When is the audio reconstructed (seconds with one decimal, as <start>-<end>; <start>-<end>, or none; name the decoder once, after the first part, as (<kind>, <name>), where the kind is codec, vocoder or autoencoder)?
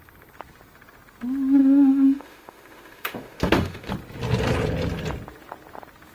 1.6-3.9 (autoencoder, DAC-VAE)